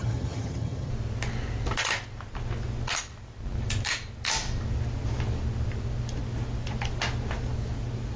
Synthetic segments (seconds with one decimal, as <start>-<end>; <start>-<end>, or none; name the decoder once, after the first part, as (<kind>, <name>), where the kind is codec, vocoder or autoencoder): 0.0-0.9 (vocoder, HiFi-GAN)